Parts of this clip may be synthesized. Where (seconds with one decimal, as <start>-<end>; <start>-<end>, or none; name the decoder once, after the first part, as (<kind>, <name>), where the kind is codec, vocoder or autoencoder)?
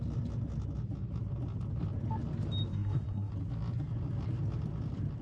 2.7-3.3 (codec, SNAC)